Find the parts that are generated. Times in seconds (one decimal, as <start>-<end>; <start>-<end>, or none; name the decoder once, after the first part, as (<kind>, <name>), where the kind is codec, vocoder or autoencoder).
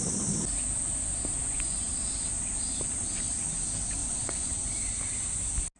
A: 1.4-1.9 (vocoder, Vocos); 4.0-4.7